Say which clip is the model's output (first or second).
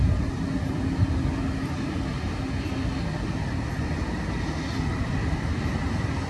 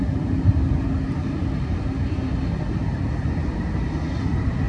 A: second